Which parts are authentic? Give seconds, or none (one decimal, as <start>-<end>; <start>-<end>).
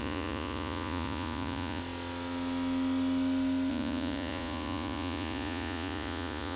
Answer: 1.8-3.7